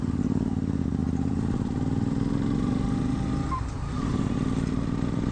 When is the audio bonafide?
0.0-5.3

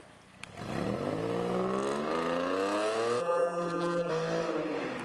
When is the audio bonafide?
0.0-3.2; 4.1-5.0

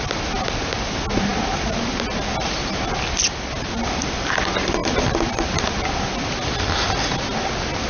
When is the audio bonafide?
0.0-7.9

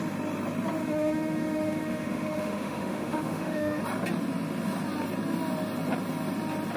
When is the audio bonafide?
0.0-0.8; 3.8-6.8

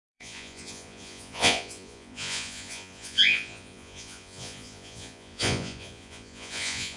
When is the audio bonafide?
none

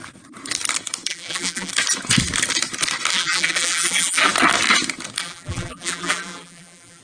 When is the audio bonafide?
0.0-1.1; 1.7-3.1; 4.3-5.2

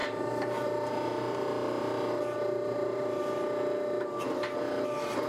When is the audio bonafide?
3.2-5.3

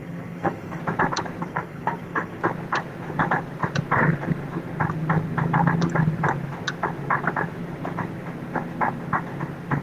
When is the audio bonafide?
0.8-1.4; 2.4-9.8